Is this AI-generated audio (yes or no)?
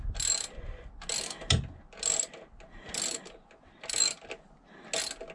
no